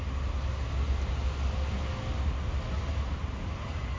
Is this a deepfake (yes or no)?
no